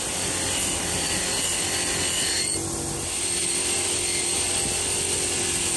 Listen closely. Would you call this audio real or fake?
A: real